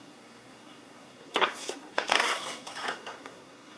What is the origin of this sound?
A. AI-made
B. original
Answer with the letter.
A